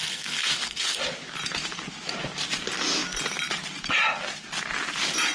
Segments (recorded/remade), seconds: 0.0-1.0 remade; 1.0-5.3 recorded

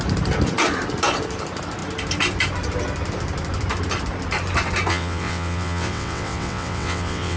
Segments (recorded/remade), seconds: 0.0-4.9 recorded; 4.9-7.4 remade

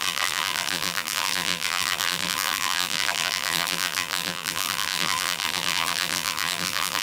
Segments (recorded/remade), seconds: 0.0-7.0 remade

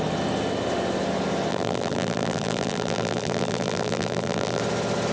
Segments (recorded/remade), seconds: 0.0-1.5 recorded; 1.5-4.6 remade; 4.6-5.1 recorded